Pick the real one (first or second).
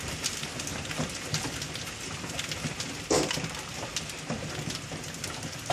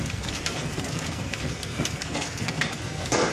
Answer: first